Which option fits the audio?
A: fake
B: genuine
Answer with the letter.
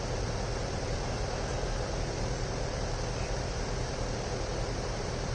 A